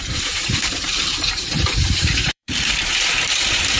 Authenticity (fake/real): fake